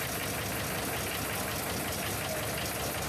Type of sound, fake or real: real